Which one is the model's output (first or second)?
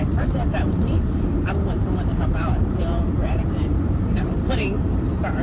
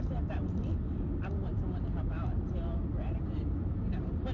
first